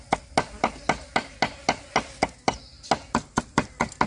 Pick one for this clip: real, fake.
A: real